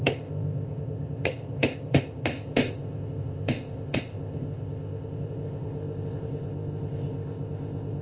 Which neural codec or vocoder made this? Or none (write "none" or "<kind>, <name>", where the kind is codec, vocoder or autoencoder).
codec, ZipCodec